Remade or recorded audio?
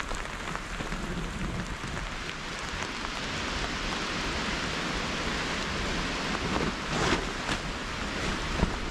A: recorded